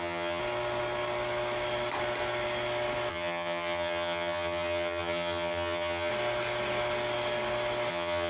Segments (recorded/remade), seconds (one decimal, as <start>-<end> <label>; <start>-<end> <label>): 0.0-0.4 remade; 0.4-3.1 recorded; 3.1-6.1 remade; 6.1-7.9 recorded; 7.9-8.3 remade